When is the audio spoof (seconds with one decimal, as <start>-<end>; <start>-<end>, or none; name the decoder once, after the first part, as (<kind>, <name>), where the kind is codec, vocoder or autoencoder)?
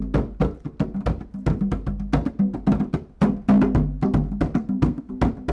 4.6-5.1 (codec, SNAC)